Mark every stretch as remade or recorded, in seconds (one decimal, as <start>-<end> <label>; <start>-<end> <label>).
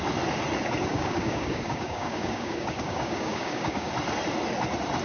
0.0-0.9 recorded; 0.9-3.9 remade; 3.9-5.0 recorded